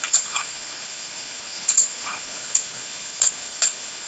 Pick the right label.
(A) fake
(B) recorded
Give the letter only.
A